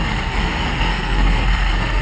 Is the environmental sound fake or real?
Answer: fake